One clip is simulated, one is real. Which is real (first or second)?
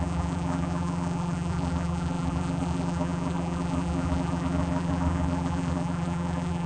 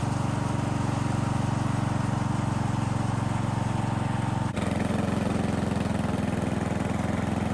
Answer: second